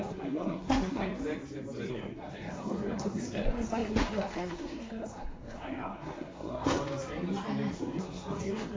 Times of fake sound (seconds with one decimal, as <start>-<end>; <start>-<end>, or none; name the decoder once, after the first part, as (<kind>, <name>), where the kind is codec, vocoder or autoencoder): 0.0-1.1 (codec, SNAC); 1.9-6.8; 7.7-8.8